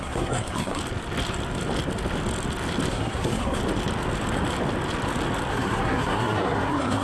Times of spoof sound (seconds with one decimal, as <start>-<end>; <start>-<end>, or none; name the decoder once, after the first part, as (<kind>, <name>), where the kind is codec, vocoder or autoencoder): 0.0-0.8 (codec, SNAC); 2.9-3.6; 5.5-7.0